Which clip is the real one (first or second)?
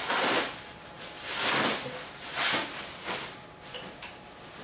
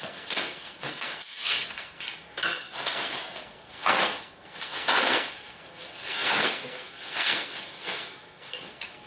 first